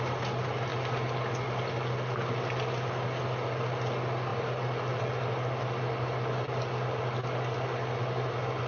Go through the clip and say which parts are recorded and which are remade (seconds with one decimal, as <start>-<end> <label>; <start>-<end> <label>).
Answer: 0.0-8.7 recorded